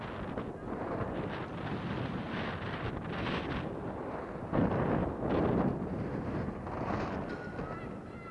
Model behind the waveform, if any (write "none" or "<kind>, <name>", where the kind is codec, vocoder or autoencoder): none